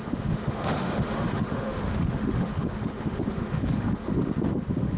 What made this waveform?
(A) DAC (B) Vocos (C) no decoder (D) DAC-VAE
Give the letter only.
D